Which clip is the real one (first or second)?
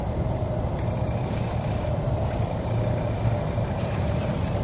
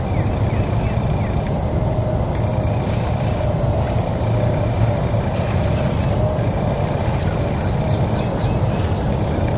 second